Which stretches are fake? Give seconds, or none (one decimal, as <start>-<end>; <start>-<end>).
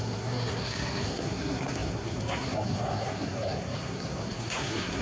0.0-5.0